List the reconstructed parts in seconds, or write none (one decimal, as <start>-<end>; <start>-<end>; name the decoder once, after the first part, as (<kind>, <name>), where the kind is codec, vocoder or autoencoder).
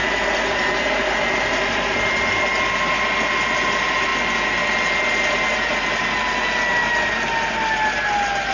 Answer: 0.0-2.0 (vocoder, BigVGAN v2)